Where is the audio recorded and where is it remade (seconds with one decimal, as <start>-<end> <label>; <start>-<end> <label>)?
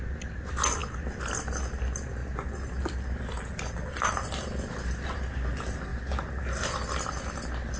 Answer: 0.0-7.8 recorded